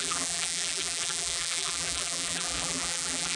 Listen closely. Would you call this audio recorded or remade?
remade